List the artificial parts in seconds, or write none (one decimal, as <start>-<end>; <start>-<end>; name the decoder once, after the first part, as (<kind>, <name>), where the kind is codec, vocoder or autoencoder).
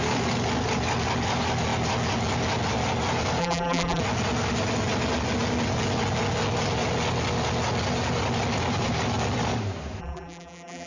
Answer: 3.4-4.0 (vocoder, BigVGAN v2); 10.0-10.9